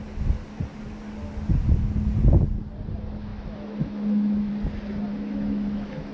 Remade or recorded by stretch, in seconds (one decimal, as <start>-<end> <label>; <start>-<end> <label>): 0.0-3.3 recorded; 3.3-4.5 remade; 4.5-5.1 recorded; 5.1-6.1 remade